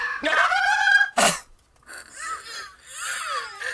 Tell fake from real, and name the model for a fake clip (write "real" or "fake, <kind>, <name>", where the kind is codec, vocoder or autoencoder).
real